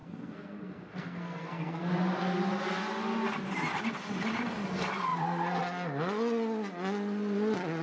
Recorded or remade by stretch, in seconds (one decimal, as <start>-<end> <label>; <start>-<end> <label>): 0.0-1.9 remade; 1.9-7.8 recorded